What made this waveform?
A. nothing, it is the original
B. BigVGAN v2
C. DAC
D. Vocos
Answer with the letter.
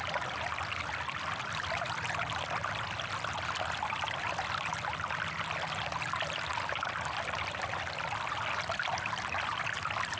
A